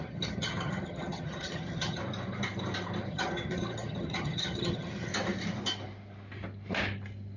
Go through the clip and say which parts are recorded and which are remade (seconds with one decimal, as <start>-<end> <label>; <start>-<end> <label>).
0.0-2.0 remade; 2.0-3.1 recorded; 3.1-5.1 remade; 5.1-7.4 recorded